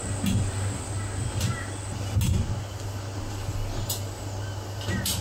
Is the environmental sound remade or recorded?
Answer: recorded